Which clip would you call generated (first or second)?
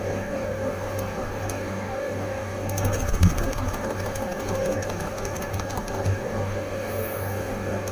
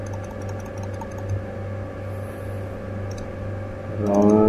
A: first